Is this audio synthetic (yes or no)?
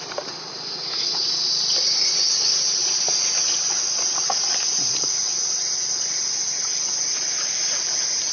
no